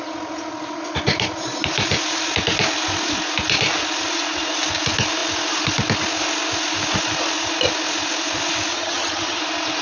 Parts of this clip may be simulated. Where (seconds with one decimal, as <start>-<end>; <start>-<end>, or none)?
8.7-9.4